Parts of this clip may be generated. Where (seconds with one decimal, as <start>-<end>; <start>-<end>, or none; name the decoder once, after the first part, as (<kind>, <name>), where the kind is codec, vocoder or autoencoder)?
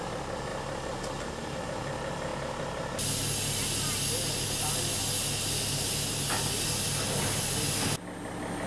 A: 0.5-1.6 (vocoder, BigVGAN v2)